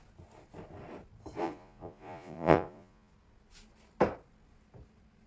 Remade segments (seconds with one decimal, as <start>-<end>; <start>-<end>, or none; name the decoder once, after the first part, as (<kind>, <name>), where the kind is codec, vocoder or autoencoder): 1.4-3.1 (vocoder, Vocos)